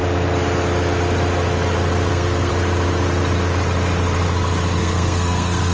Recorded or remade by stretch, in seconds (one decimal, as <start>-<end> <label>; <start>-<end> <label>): 0.0-2.1 recorded; 2.1-2.5 remade; 2.5-4.8 recorded; 4.8-5.7 remade